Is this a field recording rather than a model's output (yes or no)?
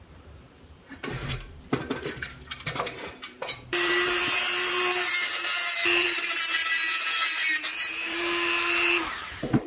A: no